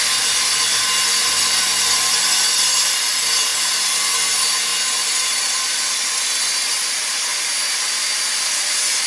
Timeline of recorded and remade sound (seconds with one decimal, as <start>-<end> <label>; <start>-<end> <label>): 0.0-4.7 remade; 4.7-6.4 recorded; 6.4-7.3 remade; 7.3-9.1 recorded